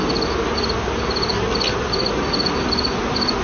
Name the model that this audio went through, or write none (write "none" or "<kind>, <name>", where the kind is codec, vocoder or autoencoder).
none